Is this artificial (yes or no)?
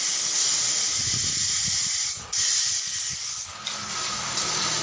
no